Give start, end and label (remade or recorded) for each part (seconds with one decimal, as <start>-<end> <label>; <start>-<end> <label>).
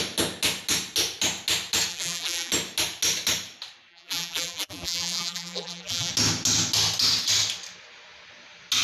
0.0-1.9 recorded; 1.9-2.5 remade; 2.5-3.9 recorded; 3.9-6.1 remade; 6.1-8.8 recorded